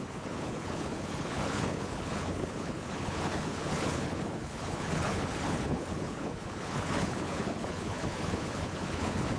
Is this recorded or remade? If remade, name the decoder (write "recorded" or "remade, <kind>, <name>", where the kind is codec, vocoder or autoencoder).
remade, codec, HILCodec